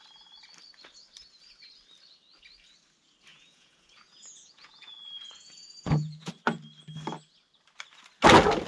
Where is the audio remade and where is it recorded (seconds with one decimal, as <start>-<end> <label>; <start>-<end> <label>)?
0.0-3.3 recorded; 3.3-6.3 remade; 6.3-8.7 recorded